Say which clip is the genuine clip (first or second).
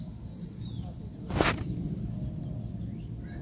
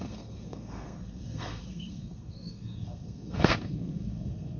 first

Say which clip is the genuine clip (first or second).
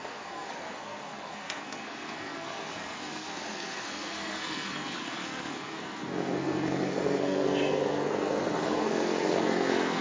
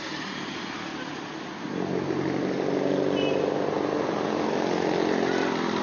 second